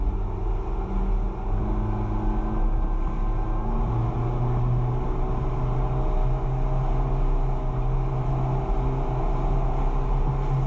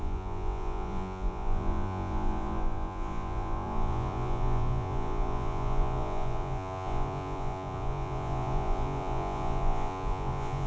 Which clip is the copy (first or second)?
second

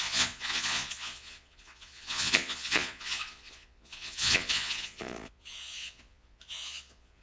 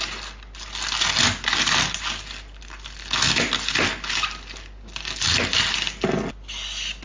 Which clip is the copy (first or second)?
first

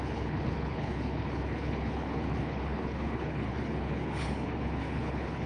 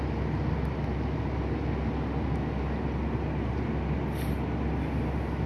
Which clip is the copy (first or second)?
first